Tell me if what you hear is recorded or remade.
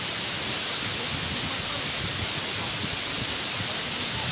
recorded